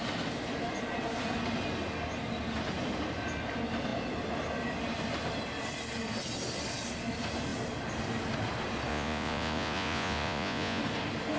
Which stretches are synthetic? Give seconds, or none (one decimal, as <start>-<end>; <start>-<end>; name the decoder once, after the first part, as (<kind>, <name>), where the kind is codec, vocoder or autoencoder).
8.9-10.8 (vocoder, Vocos)